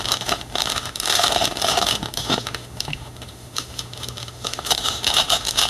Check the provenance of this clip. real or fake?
fake